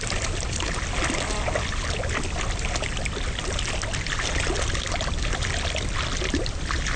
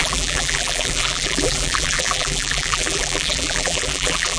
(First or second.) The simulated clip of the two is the second